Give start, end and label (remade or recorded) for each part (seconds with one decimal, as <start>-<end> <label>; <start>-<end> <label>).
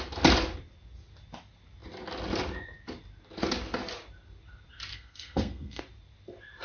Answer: 0.0-4.9 recorded; 4.9-5.8 remade; 5.8-6.6 recorded